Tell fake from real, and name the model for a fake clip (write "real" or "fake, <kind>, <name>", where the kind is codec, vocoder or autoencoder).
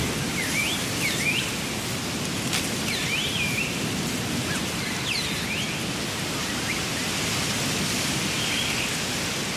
real